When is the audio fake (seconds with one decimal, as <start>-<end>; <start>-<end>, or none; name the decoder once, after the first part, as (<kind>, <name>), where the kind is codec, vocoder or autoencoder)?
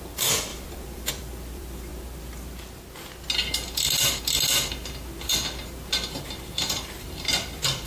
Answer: 0.0-1.9 (vocoder, BigVGAN v2); 6.4-7.9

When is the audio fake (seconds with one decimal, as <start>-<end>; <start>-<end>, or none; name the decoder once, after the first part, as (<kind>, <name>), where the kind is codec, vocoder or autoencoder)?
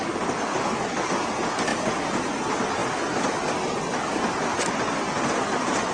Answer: 1.7-2.3 (vocoder, BigVGAN v2)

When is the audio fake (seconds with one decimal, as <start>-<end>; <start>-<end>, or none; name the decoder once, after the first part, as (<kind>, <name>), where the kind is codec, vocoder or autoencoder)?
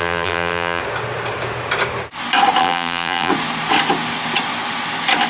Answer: 0.0-0.8 (vocoder, BigVGAN v2); 2.6-3.3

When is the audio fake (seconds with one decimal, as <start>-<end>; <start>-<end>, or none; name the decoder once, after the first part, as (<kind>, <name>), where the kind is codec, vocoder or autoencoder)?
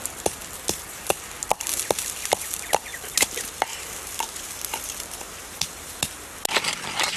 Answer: 0.4-1.1 (vocoder, BigVGAN v2); 2.9-6.0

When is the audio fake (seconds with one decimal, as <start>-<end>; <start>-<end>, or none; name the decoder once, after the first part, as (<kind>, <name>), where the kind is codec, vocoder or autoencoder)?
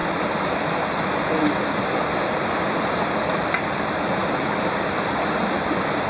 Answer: 3.7-4.2 (vocoder, BigVGAN v2); 4.7-6.1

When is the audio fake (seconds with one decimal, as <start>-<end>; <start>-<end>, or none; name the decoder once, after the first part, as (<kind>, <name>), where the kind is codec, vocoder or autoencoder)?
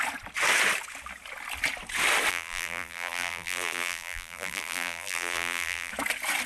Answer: 2.3-5.9 (vocoder, BigVGAN v2)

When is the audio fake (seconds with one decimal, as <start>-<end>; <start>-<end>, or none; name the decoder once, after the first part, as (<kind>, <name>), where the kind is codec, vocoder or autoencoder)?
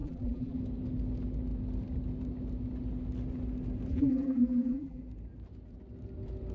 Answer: 0.0-0.6 (vocoder, BigVGAN v2); 3.9-5.0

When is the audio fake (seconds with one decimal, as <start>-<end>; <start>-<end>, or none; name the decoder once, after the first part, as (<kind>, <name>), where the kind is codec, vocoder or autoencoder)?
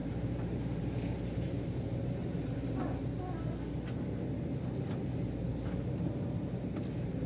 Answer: 0.0-3.1 (vocoder, BigVGAN v2)